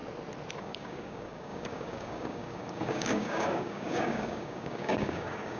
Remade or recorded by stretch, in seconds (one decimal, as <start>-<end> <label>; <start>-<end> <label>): 0.0-0.6 recorded; 0.6-5.6 remade